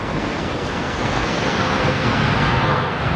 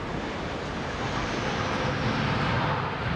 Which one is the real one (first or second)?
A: second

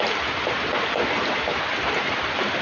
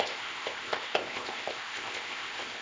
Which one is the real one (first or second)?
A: first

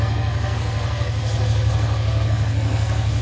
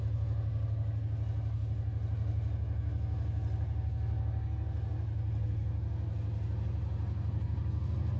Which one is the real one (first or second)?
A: second